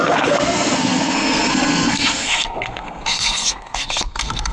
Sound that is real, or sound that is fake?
fake